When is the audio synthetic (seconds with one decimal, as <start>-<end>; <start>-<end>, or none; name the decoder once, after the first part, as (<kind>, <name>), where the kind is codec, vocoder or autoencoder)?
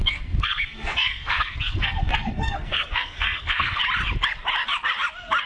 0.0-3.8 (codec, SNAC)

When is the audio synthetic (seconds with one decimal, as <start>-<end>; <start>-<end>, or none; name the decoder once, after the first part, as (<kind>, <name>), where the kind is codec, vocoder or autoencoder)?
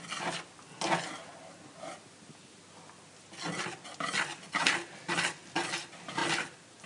none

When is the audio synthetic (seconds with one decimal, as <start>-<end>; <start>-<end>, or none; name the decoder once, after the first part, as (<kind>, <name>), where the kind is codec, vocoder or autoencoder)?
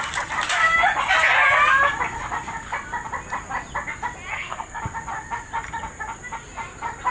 4.3-4.8 (codec, SNAC)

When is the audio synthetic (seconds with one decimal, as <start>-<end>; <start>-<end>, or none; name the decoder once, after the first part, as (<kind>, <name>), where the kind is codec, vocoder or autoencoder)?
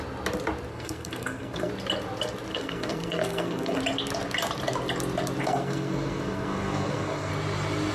0.7-1.7 (codec, SNAC); 2.5-3.8; 5.4-7.3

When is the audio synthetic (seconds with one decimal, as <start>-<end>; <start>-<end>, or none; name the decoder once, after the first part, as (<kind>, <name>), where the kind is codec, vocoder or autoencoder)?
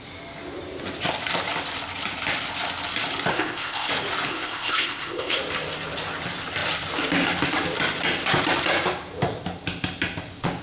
3.3-3.9 (codec, ZipCodec); 4.3-5.4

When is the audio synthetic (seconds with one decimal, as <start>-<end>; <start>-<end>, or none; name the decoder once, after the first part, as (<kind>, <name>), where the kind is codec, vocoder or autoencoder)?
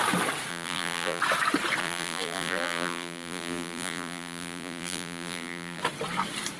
0.5-1.2 (vocoder, BigVGAN v2); 1.8-5.8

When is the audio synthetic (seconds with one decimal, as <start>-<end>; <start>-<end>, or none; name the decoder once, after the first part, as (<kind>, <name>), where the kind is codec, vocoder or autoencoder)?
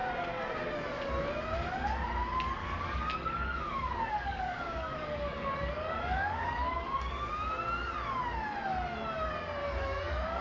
2.6-7.3 (codec, DAC); 9.6-10.4